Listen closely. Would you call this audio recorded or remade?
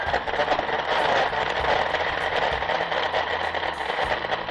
remade